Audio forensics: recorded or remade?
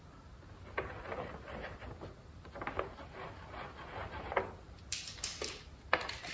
recorded